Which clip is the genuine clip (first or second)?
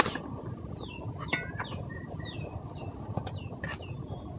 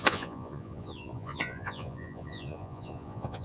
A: first